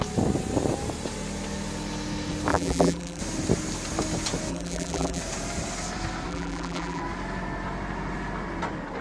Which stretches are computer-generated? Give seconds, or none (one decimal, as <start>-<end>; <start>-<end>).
2.5-3.2; 4.5-5.2; 6.3-7.0